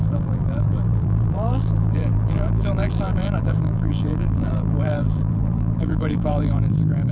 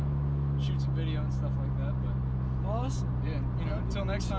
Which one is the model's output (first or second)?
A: first